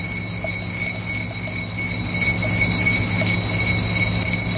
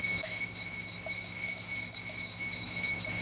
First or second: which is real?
first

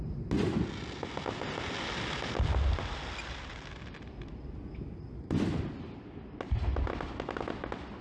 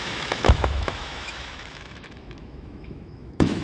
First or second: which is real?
first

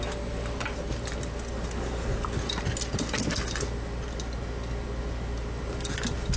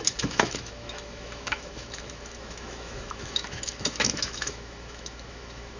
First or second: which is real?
first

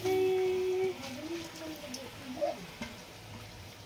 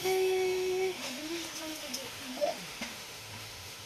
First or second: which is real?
first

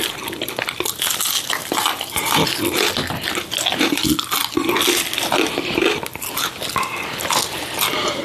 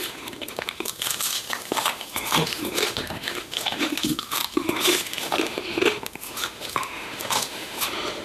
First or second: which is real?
first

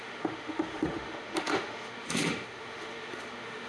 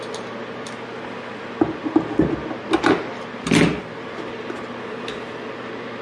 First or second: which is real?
second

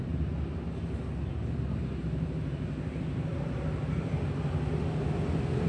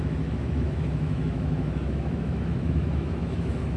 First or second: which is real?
first